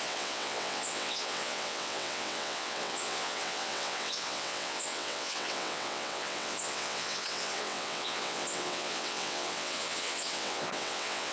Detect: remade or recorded remade